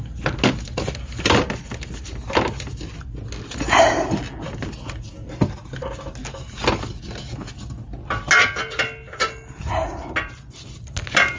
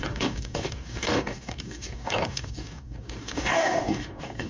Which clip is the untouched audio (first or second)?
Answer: first